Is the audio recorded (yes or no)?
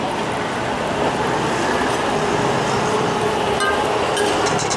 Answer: yes